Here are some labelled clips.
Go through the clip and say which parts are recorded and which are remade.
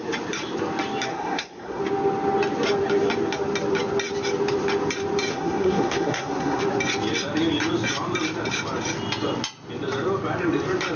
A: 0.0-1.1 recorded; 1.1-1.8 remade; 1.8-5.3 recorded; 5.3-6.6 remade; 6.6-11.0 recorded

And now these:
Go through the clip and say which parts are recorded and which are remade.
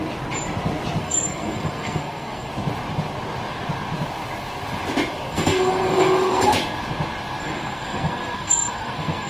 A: 0.0-1.0 recorded; 1.0-2.5 remade; 2.5-5.3 recorded; 5.3-6.5 remade; 6.5-7.4 recorded; 7.4-9.3 remade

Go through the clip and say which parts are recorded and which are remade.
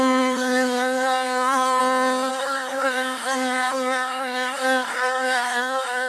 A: 0.0-1.8 remade; 1.8-2.3 recorded; 2.3-6.1 remade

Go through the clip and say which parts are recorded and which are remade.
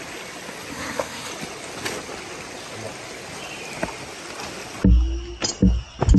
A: 0.0-0.7 recorded; 0.7-1.3 remade; 1.3-6.2 recorded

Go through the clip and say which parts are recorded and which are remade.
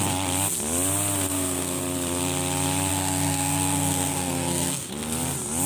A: 0.0-1.3 recorded; 1.3-1.8 remade; 1.8-2.9 recorded; 2.9-4.9 remade; 4.9-5.7 recorded